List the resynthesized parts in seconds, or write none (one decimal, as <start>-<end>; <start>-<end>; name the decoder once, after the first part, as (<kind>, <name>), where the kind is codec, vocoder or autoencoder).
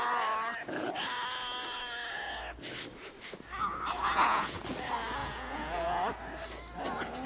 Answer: 4.0-4.6 (vocoder, Vocos); 5.2-6.0